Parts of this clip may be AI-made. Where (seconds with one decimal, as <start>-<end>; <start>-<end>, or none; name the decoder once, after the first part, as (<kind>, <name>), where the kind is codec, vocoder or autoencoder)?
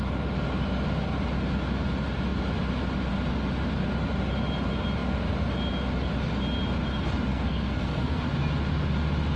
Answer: 7.3-8.2 (codec, SNAC)